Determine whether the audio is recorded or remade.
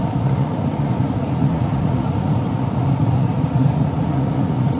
remade